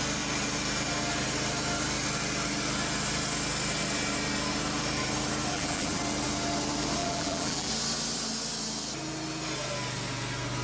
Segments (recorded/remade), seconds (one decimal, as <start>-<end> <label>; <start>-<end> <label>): 0.0-5.5 recorded; 5.5-6.0 remade; 6.0-7.0 recorded; 7.0-7.7 remade; 7.7-10.6 recorded